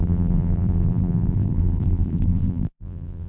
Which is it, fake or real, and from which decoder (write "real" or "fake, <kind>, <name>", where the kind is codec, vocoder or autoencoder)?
fake, vocoder, BigVGAN v2